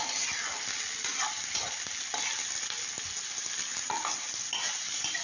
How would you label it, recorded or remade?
recorded